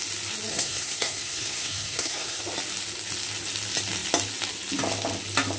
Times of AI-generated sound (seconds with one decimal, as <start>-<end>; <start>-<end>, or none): 0.5-2.4